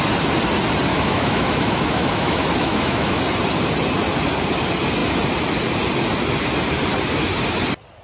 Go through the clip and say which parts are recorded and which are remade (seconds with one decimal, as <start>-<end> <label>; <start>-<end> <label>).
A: 0.0-0.9 recorded; 0.9-3.2 remade; 3.2-8.0 recorded